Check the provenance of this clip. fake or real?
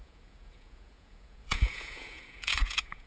fake